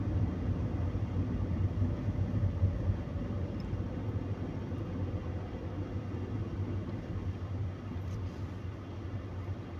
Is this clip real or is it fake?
real